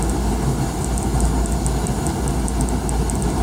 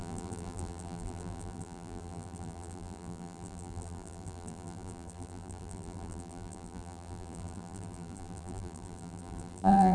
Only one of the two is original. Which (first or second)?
first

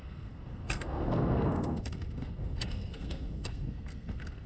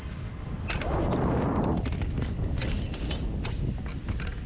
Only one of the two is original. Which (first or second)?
second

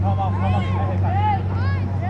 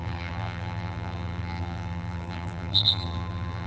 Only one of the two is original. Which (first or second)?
first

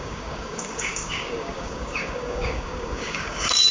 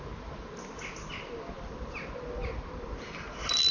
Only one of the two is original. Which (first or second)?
second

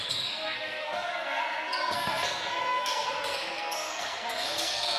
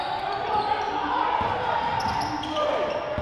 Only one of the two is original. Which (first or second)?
second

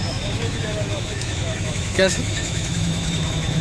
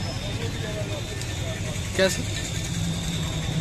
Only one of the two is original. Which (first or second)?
second